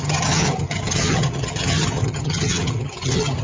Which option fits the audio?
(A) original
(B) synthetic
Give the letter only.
B